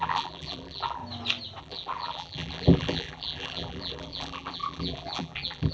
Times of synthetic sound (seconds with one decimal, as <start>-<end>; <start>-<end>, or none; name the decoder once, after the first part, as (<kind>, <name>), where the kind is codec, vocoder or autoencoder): 0.0-1.0 (vocoder, BigVGAN v2); 1.6-5.7